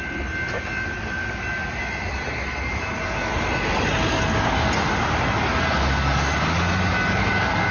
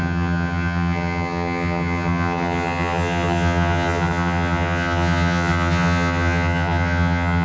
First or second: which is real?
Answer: first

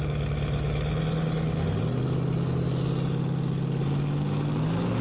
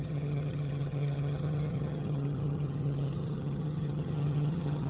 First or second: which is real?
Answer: first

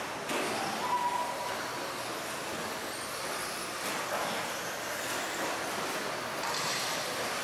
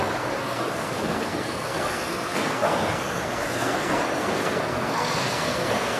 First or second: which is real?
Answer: first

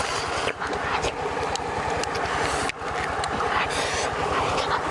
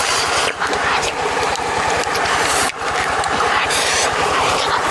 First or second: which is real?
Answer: first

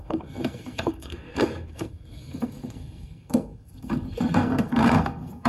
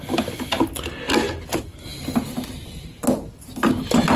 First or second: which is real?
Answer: second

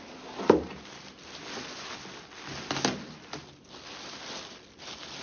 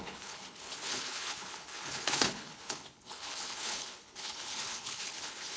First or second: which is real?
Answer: first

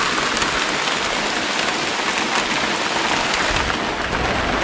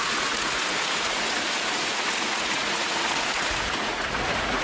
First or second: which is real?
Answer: first